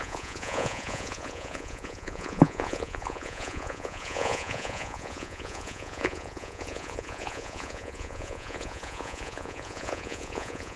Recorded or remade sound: remade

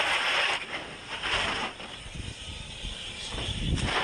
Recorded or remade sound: recorded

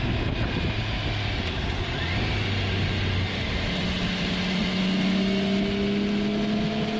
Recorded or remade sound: recorded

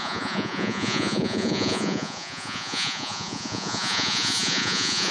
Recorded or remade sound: remade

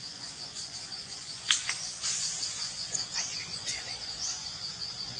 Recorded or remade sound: remade